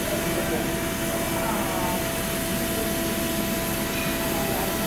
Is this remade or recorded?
recorded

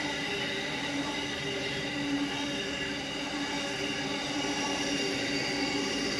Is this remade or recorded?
recorded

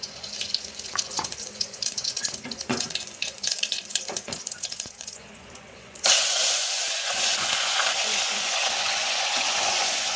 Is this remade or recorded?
remade